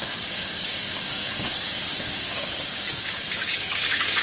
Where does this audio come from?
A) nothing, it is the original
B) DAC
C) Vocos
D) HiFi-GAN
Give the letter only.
B